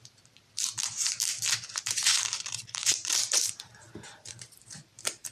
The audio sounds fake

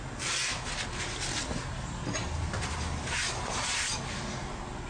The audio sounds real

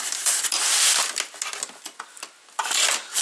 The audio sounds real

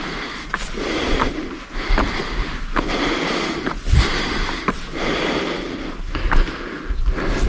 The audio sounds real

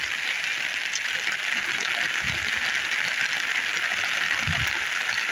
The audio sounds real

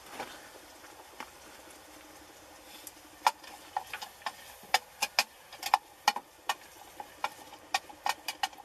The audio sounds real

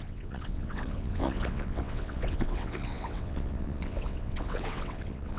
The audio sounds fake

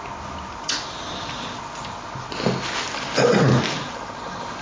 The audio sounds real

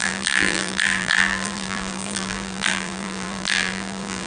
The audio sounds fake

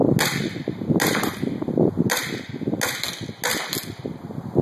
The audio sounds real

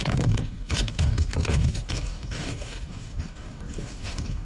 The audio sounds fake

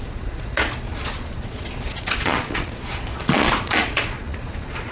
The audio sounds fake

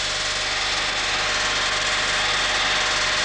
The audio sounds real